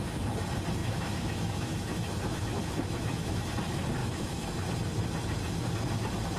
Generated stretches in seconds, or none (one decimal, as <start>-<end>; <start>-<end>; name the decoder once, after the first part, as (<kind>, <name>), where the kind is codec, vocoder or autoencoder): 0.8-3.4 (autoencoder, DAC-VAE); 4.0-4.7